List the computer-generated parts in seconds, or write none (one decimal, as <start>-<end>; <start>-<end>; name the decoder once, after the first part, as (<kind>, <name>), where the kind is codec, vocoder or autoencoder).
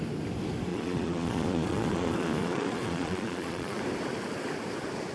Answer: 0.7-3.8 (vocoder, Vocos)